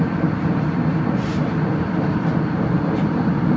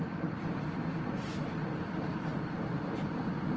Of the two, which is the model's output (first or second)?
second